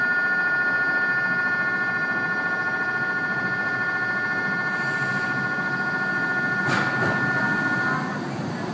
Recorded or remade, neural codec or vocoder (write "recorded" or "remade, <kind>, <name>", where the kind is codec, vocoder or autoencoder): recorded